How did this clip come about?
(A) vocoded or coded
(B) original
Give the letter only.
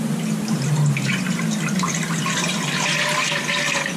B